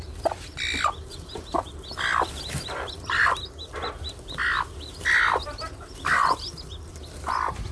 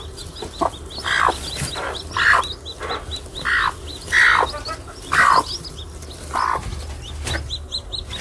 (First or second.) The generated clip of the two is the first